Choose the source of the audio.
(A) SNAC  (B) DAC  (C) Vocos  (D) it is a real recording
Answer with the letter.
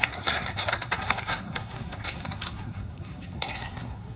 A